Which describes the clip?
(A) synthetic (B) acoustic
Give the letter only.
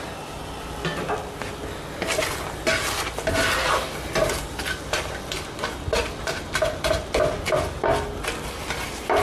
B